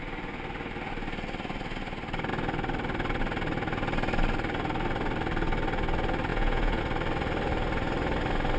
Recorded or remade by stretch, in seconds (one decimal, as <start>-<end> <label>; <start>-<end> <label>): 0.0-6.3 recorded; 6.3-6.8 remade; 6.8-8.6 recorded